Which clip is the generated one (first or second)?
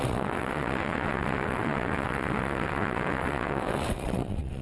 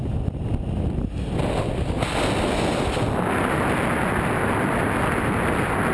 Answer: first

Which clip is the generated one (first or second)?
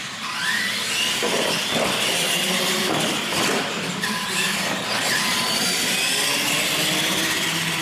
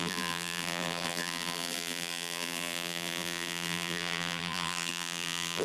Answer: second